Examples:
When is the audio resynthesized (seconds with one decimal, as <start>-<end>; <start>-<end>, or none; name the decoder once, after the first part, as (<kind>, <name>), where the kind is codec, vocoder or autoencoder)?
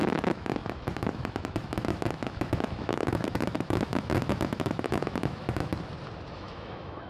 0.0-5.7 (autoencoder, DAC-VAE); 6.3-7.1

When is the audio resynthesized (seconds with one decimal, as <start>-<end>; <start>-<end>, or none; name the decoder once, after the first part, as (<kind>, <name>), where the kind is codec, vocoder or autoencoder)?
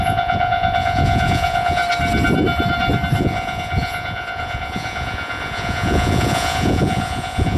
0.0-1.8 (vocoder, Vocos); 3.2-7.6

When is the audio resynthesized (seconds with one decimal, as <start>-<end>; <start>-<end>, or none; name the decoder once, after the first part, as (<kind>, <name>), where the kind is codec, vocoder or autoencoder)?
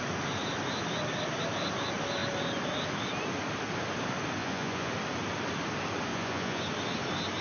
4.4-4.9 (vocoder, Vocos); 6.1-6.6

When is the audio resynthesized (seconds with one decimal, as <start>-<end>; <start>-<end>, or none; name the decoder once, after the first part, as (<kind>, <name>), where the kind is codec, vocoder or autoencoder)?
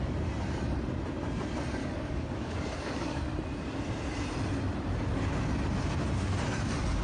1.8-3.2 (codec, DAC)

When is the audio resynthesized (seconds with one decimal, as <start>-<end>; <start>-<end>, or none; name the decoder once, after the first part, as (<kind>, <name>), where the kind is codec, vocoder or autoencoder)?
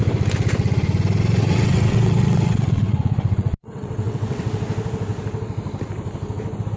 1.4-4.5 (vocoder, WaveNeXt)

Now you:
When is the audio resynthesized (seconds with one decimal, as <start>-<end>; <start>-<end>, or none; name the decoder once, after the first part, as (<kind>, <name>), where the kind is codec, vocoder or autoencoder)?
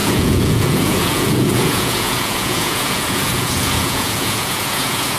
0.0-5.2 (vocoder, Vocos)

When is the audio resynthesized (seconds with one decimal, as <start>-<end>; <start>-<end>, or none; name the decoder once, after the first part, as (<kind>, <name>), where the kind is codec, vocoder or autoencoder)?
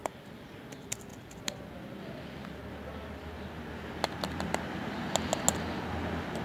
0.0-0.7 (vocoder, BigVGAN v2)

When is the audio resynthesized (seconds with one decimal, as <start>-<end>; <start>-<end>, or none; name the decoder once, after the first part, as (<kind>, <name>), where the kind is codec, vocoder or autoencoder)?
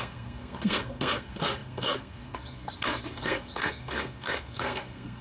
0.0-5.2 (codec, SNAC)